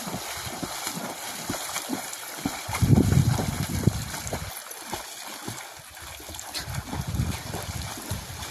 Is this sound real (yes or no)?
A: no